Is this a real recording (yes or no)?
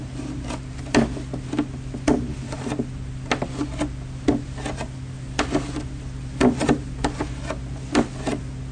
yes